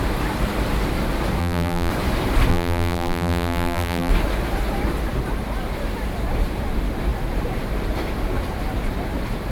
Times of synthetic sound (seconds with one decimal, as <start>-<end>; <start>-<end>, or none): 1.4-1.9; 2.5-4.1